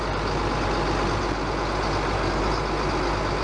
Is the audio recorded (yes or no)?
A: yes